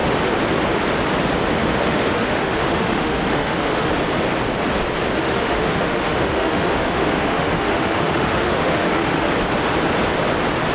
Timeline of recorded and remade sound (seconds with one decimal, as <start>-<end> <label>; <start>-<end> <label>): 0.0-1.6 recorded; 1.6-3.9 remade; 3.9-5.2 recorded; 5.2-9.3 remade; 9.3-10.7 recorded